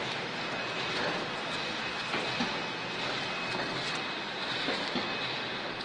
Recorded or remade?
recorded